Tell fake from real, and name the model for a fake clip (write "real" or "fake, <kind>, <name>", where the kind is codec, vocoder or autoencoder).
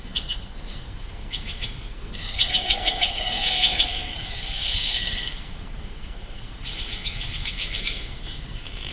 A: fake, codec, SNAC